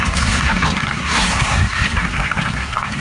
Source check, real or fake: fake